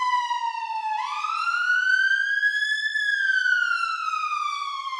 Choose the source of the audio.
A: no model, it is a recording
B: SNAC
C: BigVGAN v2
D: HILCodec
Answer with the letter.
A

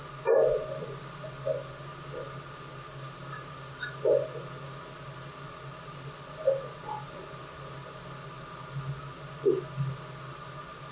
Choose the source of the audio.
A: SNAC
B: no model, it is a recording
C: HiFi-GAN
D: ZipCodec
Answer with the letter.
B